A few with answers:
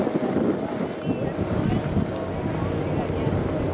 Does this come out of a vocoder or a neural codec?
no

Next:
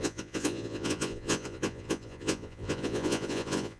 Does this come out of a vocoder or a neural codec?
yes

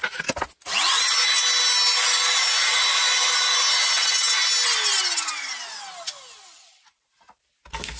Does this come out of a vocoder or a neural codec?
no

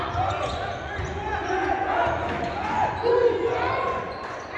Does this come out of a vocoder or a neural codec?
yes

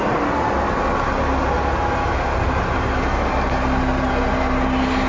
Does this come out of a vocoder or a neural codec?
no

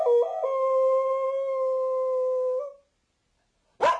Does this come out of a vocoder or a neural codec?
no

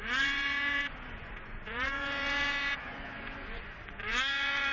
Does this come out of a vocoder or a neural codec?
yes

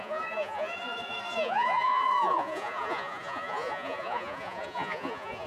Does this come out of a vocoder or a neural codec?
yes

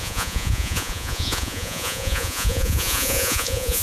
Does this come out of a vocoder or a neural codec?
yes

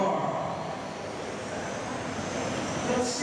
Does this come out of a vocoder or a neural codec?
no